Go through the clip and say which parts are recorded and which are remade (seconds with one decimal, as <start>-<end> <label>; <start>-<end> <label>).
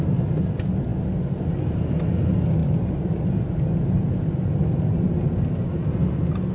0.0-2.6 recorded; 2.6-3.2 remade; 3.2-6.5 recorded